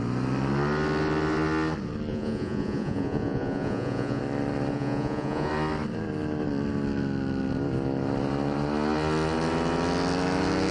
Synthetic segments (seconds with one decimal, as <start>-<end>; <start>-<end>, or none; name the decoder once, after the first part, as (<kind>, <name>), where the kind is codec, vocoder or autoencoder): 2.1-4.2 (vocoder, Vocos); 4.7-5.5